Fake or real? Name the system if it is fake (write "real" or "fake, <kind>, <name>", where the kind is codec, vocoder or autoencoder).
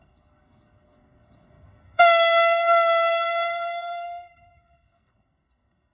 fake, codec, SNAC